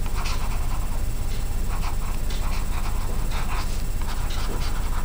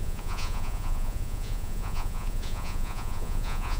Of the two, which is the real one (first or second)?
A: first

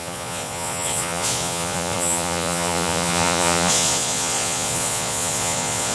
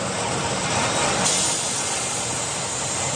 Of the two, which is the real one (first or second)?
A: second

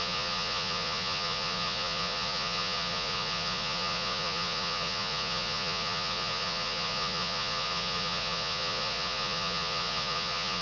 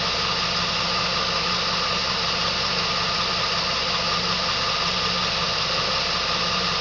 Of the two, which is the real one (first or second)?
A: second